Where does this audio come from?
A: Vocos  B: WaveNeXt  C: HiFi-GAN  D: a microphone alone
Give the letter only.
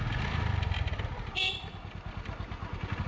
D